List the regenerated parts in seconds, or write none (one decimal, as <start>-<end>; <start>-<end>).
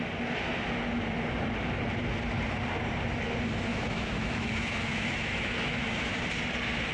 3.7-6.1